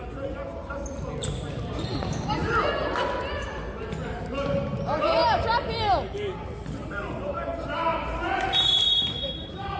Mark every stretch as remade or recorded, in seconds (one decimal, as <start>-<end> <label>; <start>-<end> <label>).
0.0-9.8 recorded